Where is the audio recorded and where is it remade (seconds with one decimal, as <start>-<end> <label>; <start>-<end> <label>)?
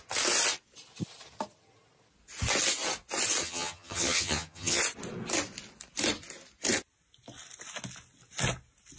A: 0.0-3.4 recorded; 3.4-4.8 remade; 4.8-9.0 recorded